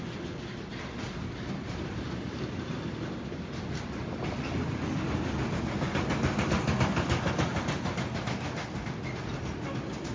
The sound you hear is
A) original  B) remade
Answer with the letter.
A